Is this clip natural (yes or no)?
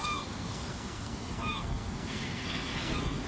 no